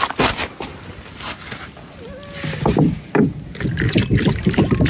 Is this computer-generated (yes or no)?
no